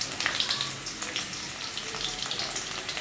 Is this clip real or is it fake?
real